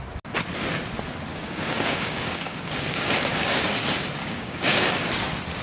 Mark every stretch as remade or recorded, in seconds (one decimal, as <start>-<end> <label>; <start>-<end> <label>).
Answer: 0.0-1.3 recorded; 1.3-3.6 remade; 3.6-4.2 recorded; 4.2-5.1 remade; 5.1-5.6 recorded